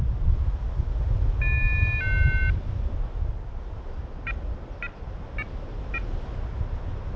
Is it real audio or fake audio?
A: real